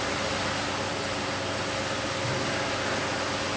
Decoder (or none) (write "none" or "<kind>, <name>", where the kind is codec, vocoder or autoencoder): none